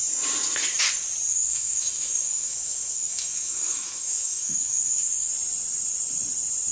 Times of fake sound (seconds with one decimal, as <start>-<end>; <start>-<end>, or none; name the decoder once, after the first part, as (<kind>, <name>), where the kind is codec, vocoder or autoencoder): 1.3-5.3 (autoencoder, DAC-VAE)